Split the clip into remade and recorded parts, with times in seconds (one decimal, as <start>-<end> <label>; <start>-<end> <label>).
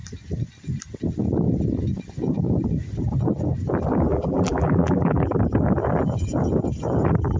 0.0-4.1 recorded; 4.1-5.4 remade; 5.4-7.4 recorded